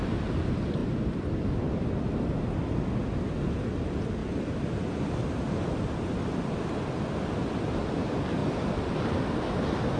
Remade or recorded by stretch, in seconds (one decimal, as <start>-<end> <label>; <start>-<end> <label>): 0.0-0.8 recorded; 0.8-2.0 remade; 2.0-4.2 recorded; 4.2-5.9 remade; 5.9-8.4 recorded; 8.4-9.2 remade; 9.2-10.0 recorded